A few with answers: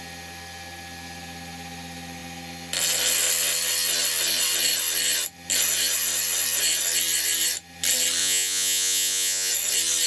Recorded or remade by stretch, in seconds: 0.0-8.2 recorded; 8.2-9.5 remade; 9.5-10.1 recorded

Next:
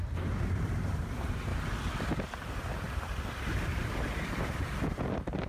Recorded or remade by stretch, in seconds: 0.0-1.5 remade; 1.5-4.6 recorded; 4.6-5.5 remade